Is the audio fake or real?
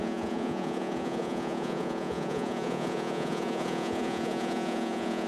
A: fake